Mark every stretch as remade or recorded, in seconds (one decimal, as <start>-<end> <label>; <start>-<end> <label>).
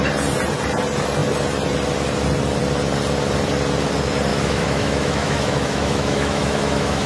0.0-4.3 recorded; 4.3-7.1 remade